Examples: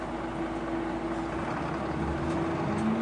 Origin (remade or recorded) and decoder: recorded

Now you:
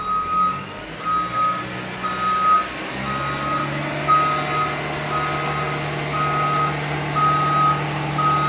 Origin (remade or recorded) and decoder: recorded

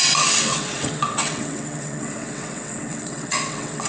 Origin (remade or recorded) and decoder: remade, vocoder, WaveNeXt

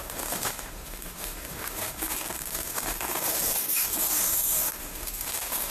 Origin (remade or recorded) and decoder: remade, codec, DAC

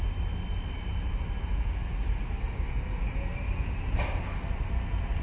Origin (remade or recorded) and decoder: recorded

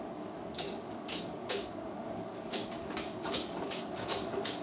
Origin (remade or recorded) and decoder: remade, codec, DAC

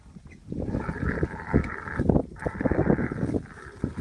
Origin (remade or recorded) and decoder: recorded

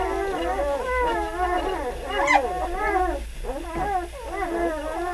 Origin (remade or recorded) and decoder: recorded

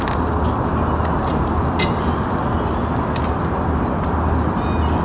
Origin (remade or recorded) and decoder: recorded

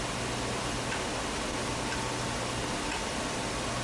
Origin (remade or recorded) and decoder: recorded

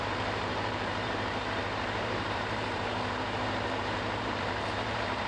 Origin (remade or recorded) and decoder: remade, vocoder, BigVGAN v2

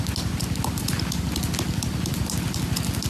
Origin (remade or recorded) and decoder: recorded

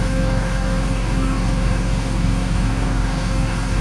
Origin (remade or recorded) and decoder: remade, codec, DAC